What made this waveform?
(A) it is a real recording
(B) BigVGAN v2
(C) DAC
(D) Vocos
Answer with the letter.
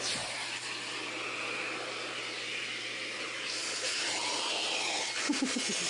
A